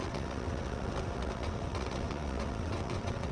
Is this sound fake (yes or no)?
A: yes